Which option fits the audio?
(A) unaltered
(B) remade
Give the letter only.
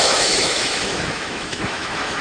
B